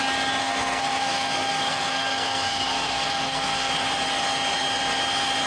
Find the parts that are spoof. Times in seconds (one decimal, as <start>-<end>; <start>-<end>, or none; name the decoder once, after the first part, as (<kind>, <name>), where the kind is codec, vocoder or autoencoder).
0.4-3.7 (codec, SNAC)